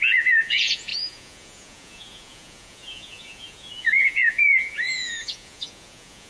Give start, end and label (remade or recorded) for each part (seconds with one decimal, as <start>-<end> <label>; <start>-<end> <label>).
0.0-6.3 remade